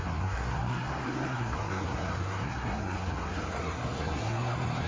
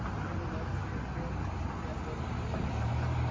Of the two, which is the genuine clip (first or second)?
second